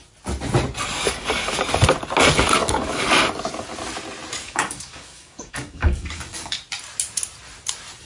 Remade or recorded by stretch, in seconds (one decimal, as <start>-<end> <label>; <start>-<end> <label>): 0.0-0.9 recorded; 0.9-1.6 remade; 1.6-2.6 recorded; 2.6-3.2 remade; 3.2-4.4 recorded; 4.4-6.6 remade; 6.6-8.0 recorded